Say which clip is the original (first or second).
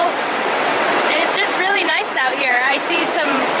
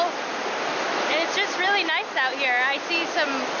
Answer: second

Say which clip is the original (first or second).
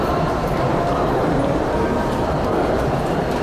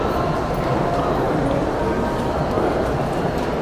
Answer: second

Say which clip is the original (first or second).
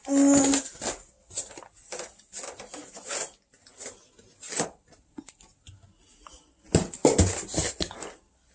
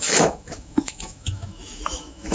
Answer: first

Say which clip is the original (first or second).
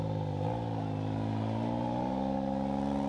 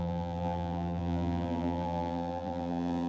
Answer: first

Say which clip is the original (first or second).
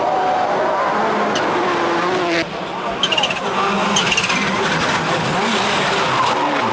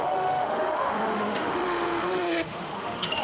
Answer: first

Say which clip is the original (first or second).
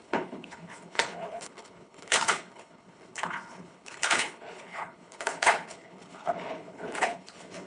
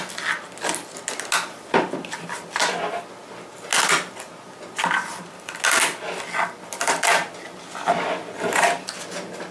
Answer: second